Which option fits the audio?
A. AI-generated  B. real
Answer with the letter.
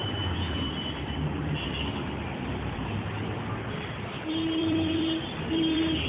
A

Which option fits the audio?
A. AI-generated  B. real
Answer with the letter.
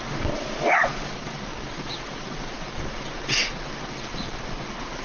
A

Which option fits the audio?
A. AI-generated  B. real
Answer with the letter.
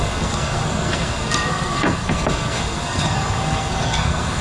A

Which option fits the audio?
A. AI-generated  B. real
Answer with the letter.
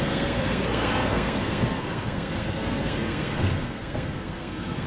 A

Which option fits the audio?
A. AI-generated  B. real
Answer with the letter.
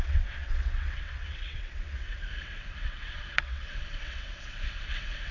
A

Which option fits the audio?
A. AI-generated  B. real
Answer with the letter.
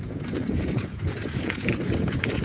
A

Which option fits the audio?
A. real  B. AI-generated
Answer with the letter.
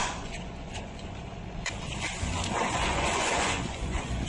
B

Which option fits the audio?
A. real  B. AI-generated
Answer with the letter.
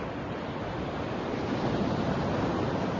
A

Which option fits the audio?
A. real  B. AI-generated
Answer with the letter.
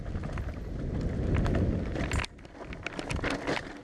A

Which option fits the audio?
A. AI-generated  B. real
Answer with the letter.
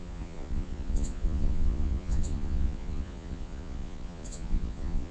A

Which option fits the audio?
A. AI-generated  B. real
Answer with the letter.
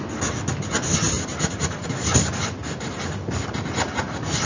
B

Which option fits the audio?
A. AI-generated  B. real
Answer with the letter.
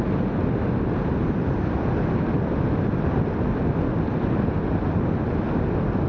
B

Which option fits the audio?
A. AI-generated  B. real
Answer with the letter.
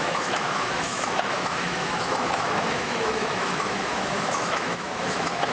A